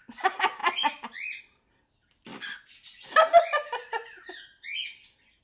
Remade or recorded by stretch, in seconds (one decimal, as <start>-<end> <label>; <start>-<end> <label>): 0.0-5.4 recorded